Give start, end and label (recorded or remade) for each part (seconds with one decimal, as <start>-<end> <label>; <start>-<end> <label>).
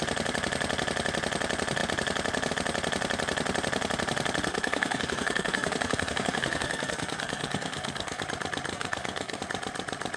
0.0-4.5 recorded; 4.5-8.2 remade; 8.2-8.7 recorded; 8.7-9.4 remade; 9.4-10.2 recorded